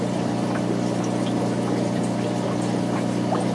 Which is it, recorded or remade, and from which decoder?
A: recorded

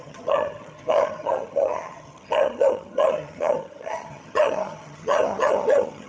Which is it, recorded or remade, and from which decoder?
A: remade, vocoder, HiFi-GAN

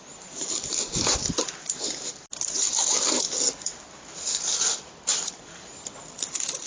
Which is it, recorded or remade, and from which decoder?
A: recorded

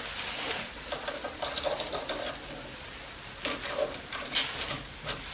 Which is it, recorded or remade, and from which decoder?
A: recorded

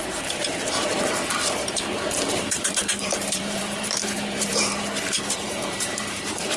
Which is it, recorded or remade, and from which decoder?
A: remade, vocoder, BigVGAN v2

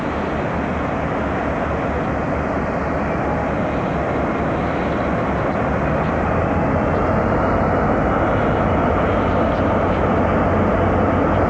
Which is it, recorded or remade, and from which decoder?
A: recorded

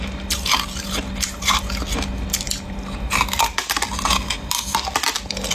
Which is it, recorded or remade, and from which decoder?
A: recorded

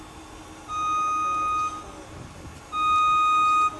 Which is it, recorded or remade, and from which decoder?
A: recorded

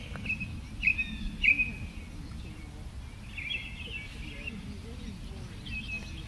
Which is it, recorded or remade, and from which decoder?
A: recorded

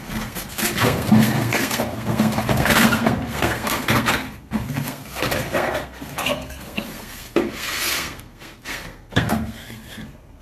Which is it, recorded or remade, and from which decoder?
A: remade, codec, SNAC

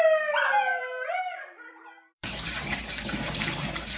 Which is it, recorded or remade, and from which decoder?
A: remade, vocoder, BigVGAN v2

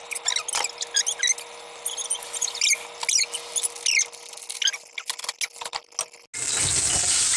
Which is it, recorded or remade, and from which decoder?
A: recorded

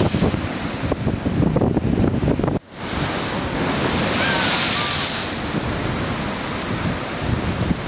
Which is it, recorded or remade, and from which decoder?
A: recorded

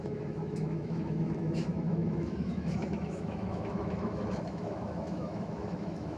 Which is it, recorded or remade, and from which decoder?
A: remade, autoencoder, DAC-VAE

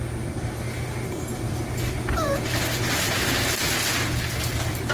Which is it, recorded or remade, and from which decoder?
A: recorded